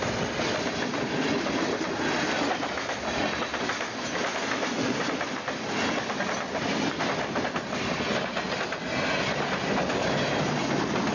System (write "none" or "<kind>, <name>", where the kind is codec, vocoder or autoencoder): none